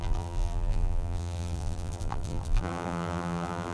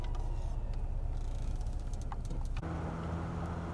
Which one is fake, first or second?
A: first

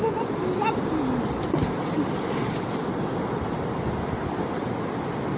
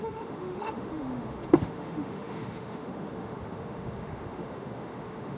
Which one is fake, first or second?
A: second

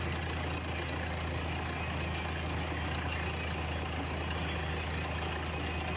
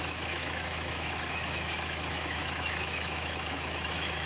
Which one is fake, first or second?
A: second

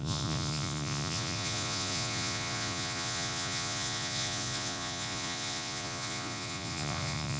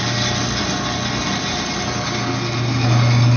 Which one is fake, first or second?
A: first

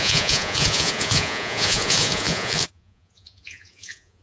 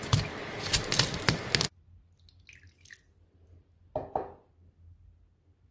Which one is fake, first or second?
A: first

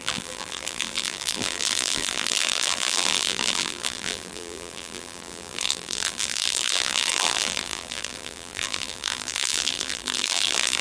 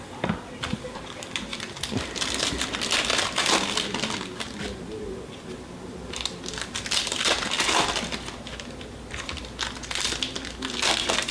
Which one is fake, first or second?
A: first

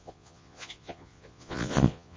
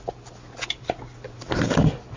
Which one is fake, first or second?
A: first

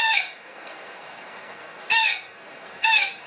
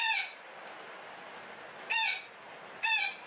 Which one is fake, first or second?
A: first